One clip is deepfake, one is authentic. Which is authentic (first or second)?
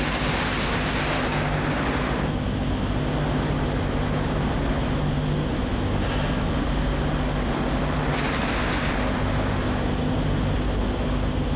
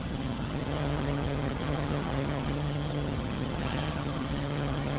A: first